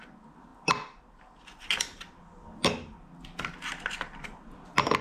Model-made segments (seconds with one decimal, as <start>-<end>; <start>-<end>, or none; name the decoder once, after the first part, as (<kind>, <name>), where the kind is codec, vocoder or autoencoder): none